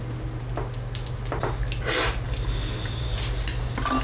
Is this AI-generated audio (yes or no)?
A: no